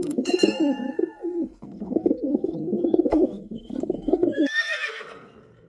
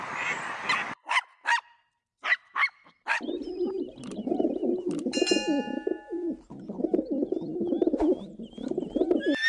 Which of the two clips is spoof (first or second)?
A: first